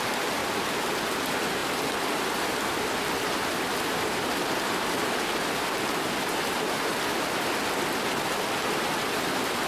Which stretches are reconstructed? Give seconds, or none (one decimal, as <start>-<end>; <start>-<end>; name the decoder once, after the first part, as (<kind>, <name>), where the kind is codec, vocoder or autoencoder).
none